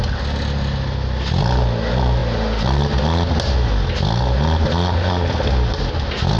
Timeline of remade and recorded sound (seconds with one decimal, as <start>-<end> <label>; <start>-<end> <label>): 0.0-6.4 recorded